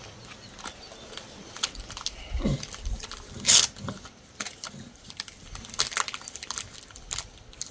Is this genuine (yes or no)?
yes